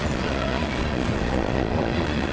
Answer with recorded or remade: remade